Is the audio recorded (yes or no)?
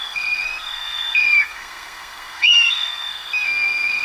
no